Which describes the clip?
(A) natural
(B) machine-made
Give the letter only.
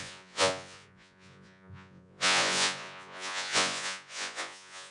B